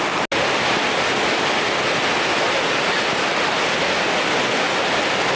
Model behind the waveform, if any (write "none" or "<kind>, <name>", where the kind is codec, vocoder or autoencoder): none